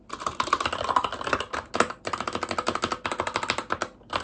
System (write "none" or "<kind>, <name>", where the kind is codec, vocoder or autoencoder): none